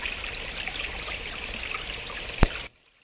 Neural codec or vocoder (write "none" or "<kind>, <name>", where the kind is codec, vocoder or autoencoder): none